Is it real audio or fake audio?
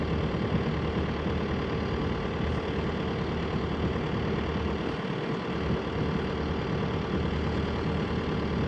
real